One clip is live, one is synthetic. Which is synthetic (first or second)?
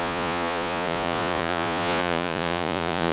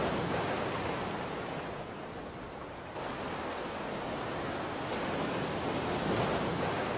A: first